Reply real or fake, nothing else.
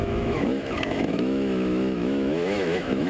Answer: fake